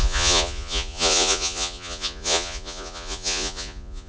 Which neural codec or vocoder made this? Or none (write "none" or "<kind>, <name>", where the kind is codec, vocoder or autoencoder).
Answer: vocoder, Vocos